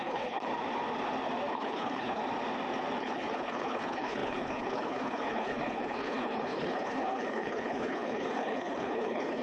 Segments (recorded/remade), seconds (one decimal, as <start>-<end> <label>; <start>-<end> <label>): 0.0-0.5 remade; 0.5-1.5 recorded; 1.5-2.2 remade; 2.2-3.0 recorded; 3.0-9.4 remade